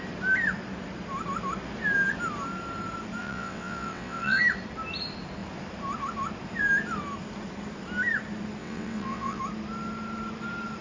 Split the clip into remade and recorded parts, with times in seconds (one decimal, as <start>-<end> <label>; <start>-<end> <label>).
0.0-3.2 recorded; 3.2-4.4 remade; 4.4-8.6 recorded; 8.6-9.4 remade; 9.4-10.8 recorded